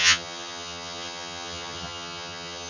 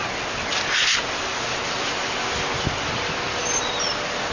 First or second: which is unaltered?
second